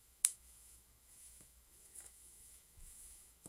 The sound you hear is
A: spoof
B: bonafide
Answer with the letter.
A